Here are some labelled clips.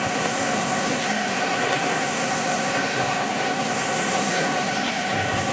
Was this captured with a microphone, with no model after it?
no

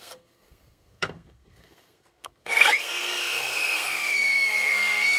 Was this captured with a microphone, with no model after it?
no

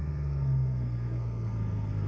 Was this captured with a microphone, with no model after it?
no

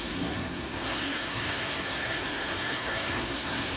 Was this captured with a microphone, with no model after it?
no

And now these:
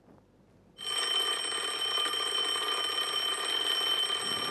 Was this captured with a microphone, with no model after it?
yes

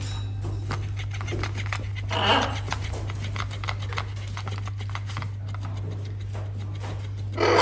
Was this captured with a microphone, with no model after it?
yes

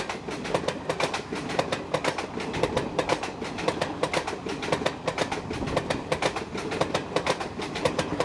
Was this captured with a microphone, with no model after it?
yes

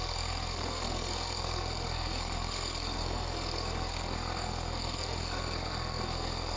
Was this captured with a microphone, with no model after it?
no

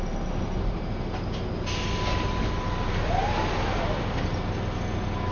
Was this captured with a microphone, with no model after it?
yes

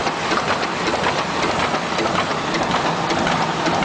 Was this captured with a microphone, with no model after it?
yes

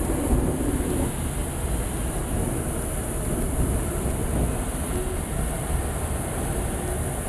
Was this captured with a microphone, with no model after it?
yes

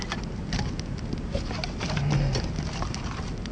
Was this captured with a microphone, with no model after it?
yes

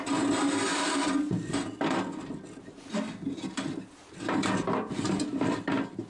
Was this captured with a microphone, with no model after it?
yes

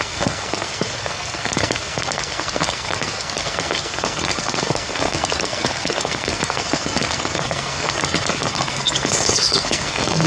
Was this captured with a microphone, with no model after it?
no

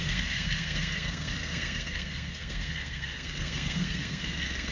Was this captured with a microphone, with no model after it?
no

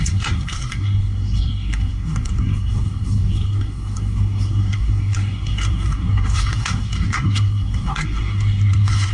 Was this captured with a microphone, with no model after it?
no